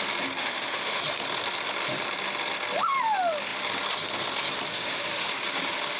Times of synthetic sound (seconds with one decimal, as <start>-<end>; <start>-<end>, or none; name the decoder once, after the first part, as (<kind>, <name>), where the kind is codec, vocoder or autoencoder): 0.4-1.0 (autoencoder, DAC-VAE); 4.7-5.3